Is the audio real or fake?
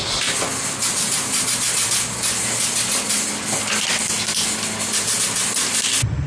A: real